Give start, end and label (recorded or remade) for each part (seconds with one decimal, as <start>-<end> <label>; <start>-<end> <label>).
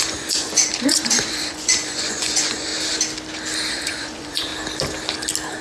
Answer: 0.0-2.7 remade; 2.7-3.7 recorded; 3.7-4.5 remade; 4.5-5.6 recorded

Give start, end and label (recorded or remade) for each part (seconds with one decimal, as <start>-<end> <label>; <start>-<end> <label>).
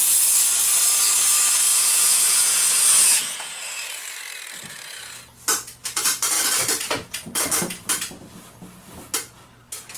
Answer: 0.0-1.7 recorded; 1.7-4.0 remade; 4.0-10.0 recorded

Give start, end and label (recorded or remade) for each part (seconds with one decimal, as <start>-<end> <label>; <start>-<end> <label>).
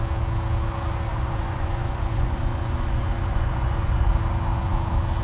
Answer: 0.0-1.1 recorded; 1.1-4.1 remade; 4.1-5.2 recorded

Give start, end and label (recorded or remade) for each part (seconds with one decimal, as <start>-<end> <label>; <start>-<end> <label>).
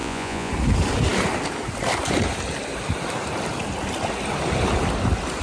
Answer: 0.0-0.5 remade; 0.5-5.4 recorded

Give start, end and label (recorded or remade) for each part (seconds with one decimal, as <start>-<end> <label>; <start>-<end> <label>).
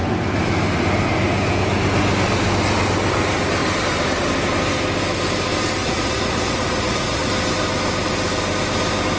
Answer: 0.0-5.8 recorded; 5.8-7.3 remade; 7.3-9.2 recorded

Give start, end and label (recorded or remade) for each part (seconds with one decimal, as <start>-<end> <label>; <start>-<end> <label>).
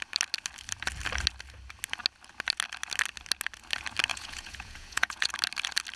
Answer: 0.0-4.1 recorded; 4.1-5.3 remade; 5.3-6.0 recorded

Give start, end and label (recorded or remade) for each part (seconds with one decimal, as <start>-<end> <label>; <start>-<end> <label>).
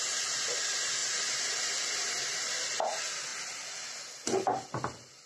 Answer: 0.0-5.3 recorded